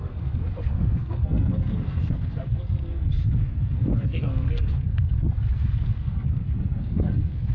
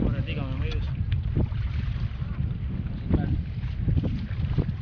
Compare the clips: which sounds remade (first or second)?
first